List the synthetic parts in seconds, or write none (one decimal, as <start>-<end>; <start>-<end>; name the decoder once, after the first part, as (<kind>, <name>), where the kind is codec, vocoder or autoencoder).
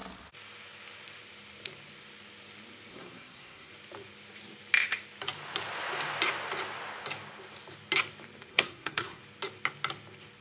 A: 2.9-3.7 (codec, SNAC); 8.5-9.2